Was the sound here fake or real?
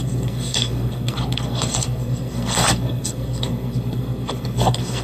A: fake